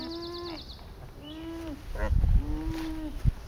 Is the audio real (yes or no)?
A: yes